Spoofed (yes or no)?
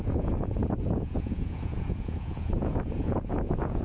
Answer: yes